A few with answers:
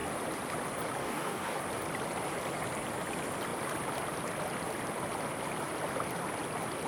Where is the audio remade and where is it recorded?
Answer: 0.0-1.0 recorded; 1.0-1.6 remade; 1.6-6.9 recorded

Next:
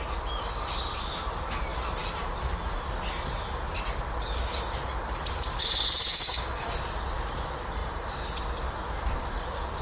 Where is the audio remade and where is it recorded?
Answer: 0.0-5.6 recorded; 5.6-6.7 remade; 6.7-9.8 recorded

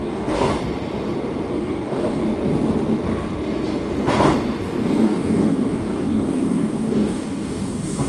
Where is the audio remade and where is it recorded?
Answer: 0.0-0.5 remade; 0.5-1.5 recorded; 1.5-2.2 remade; 2.2-4.8 recorded; 4.8-8.1 remade